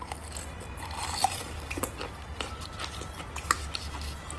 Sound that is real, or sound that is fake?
real